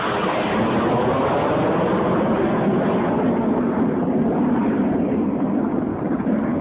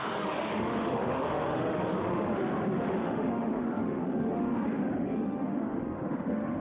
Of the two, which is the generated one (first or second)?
second